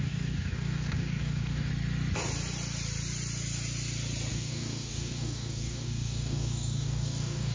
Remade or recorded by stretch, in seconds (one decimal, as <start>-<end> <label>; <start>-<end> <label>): 0.0-1.7 remade; 1.7-4.3 recorded; 4.3-7.5 remade